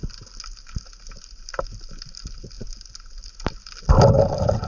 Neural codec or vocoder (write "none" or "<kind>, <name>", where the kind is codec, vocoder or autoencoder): none